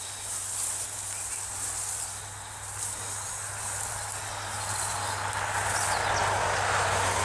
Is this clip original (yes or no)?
yes